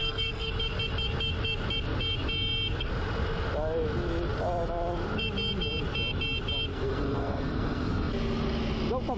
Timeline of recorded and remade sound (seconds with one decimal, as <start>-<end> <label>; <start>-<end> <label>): 0.0-0.5 remade; 0.5-6.7 recorded; 6.7-8.1 remade; 8.1-9.2 recorded